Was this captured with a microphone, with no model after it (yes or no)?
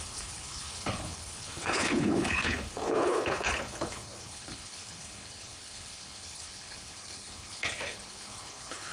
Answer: no